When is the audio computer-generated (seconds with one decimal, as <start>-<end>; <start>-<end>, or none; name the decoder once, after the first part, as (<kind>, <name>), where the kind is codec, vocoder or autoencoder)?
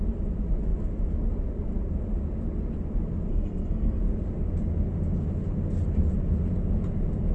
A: 3.3-4.0 (codec, SNAC)